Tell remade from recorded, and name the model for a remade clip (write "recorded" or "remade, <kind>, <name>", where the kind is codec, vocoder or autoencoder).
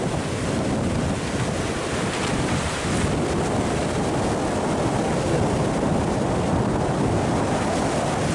recorded